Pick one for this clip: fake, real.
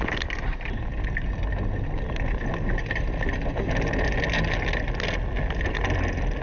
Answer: real